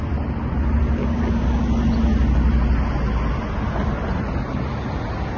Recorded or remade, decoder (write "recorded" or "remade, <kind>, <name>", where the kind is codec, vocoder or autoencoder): recorded